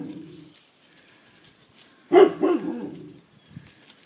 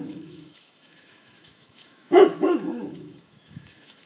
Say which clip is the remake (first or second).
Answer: second